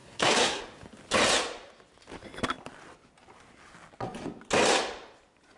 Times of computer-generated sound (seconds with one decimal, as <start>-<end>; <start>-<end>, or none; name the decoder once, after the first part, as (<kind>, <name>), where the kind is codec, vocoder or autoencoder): 0.0-0.6 (codec, SNAC)